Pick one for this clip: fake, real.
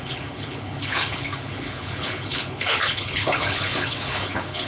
fake